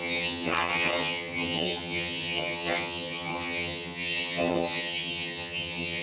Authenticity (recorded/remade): remade